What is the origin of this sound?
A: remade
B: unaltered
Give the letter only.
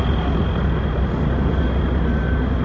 B